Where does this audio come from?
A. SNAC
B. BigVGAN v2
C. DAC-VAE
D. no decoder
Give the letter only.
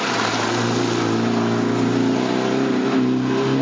D